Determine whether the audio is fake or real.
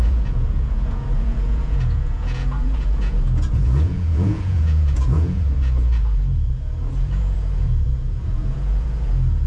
fake